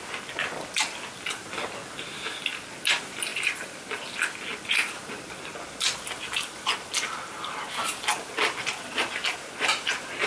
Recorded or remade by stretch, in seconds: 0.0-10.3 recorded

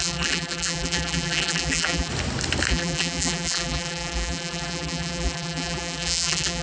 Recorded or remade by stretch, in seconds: 0.0-2.1 remade; 2.1-2.7 recorded; 2.7-6.6 remade

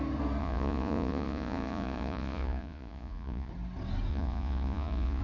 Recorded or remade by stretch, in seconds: 0.0-0.4 recorded; 0.4-3.5 remade; 3.5-4.1 recorded; 4.1-5.2 remade

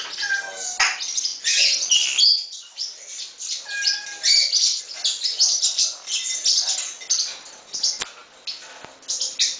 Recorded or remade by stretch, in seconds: 0.0-9.6 recorded

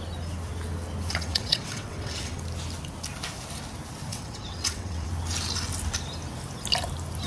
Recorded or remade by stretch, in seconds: 0.0-1.1 recorded; 1.1-2.4 remade; 2.4-4.1 recorded; 4.1-5.1 remade; 5.1-7.3 recorded

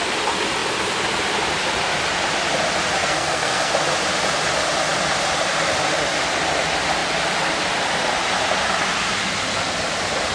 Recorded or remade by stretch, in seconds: 0.0-3.0 recorded; 3.0-3.7 remade; 3.7-10.3 recorded